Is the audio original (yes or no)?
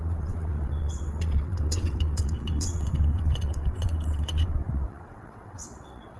no